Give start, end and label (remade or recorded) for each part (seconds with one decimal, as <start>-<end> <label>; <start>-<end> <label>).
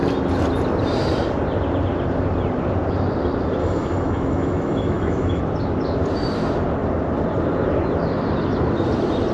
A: 0.0-3.6 recorded; 3.6-5.4 remade; 5.4-9.3 recorded